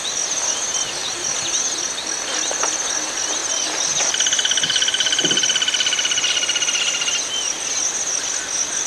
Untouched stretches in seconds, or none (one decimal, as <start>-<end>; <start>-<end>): 0.0-8.9